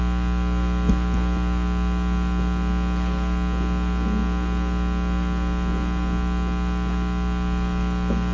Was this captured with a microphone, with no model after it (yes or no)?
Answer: yes